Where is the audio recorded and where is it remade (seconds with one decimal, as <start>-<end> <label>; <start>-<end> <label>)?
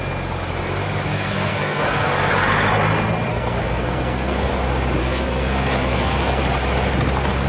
0.0-1.1 recorded; 1.1-2.3 remade; 2.3-3.3 recorded; 3.3-4.5 remade; 4.5-5.0 recorded; 5.0-6.4 remade; 6.4-7.5 recorded